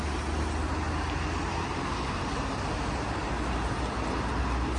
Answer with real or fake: real